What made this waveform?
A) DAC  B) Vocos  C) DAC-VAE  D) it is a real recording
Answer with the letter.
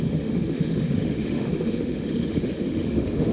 C